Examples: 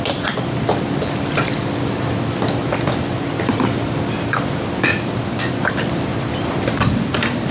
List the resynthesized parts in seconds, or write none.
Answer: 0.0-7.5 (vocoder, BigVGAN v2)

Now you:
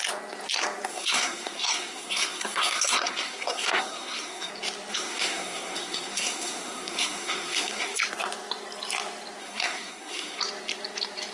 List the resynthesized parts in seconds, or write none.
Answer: 0.9-4.5 (codec, SNAC); 4.9-8.0; 9.4-10.4

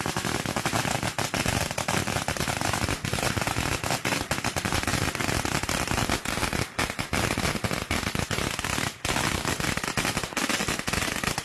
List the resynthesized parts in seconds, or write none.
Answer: 0.0-3.1 (vocoder, BigVGAN v2); 3.7-10.6